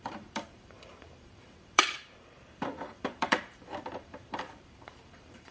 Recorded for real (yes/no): no